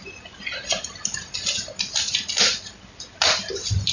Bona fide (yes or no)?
yes